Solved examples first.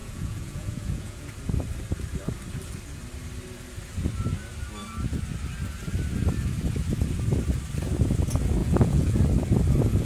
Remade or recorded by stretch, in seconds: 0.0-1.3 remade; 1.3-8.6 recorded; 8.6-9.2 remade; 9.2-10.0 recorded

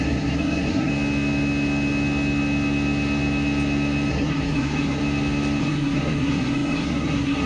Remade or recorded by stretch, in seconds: 0.0-0.9 remade; 0.9-4.1 recorded; 4.1-5.0 remade; 5.0-5.6 recorded; 5.6-7.5 remade

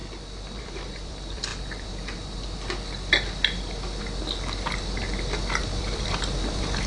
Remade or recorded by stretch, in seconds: 0.0-0.6 recorded; 0.6-1.5 remade; 1.5-5.6 recorded; 5.6-6.9 remade

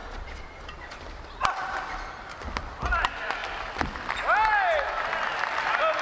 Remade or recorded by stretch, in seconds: 0.0-1.0 remade; 1.0-6.0 recorded